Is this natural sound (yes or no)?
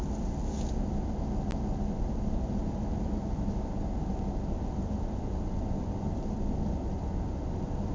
yes